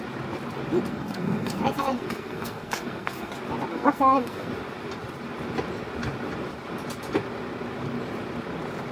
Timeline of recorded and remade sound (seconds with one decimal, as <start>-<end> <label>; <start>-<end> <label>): 0.0-0.9 recorded; 0.9-3.3 remade; 3.3-3.7 recorded; 3.7-4.5 remade; 4.5-8.9 recorded